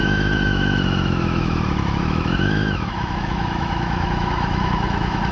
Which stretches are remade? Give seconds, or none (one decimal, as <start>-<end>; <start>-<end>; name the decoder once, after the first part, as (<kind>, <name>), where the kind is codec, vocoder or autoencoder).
0.0-5.3 (autoencoder, DAC-VAE)